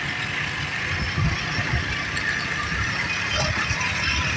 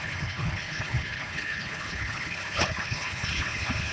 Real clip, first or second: first